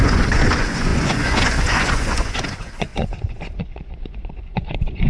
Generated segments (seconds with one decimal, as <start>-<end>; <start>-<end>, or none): 0.0-5.1